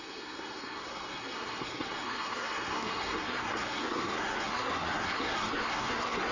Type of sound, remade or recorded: remade